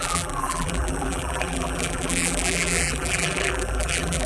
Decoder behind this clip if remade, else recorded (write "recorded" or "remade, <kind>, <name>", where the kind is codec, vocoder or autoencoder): remade, vocoder, BigVGAN v2